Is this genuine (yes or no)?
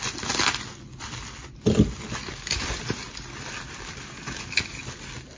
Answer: yes